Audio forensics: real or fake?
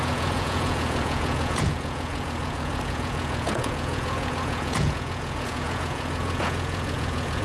fake